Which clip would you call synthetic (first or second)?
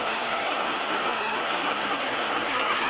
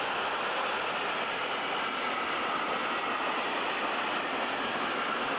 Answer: first